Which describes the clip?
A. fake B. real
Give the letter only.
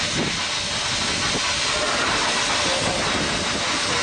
B